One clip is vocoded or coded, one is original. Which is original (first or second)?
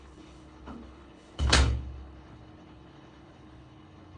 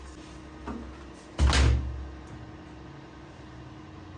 second